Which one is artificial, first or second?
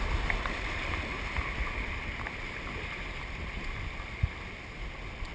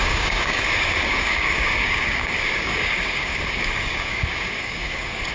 second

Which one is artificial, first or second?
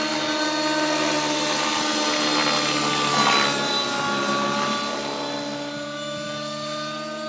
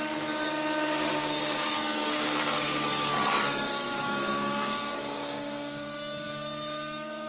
second